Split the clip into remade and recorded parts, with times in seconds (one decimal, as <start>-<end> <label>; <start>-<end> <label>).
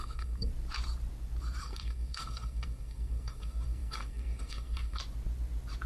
0.0-0.5 remade; 0.5-1.6 recorded; 1.6-5.0 remade; 5.0-5.9 recorded